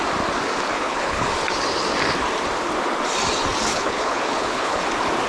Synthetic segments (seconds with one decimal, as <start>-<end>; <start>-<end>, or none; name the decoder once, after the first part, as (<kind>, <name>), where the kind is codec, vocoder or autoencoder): 0.7-1.3 (codec, HILCodec); 3.7-4.8